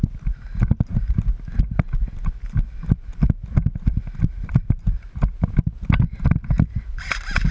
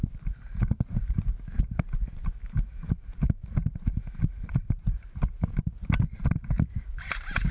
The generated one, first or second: second